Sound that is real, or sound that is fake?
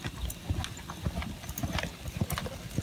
real